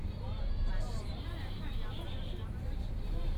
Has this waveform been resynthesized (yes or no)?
yes